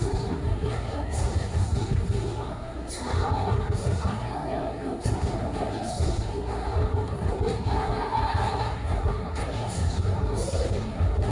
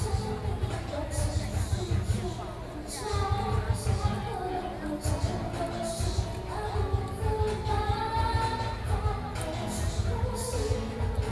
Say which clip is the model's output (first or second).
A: first